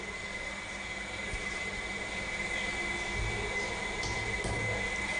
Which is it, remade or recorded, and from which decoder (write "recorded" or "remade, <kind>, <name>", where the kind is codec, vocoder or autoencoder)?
recorded